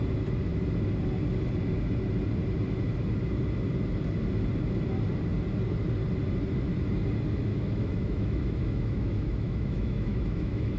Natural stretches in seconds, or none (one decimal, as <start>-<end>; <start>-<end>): 0.0-7.5